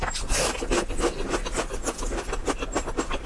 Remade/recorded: recorded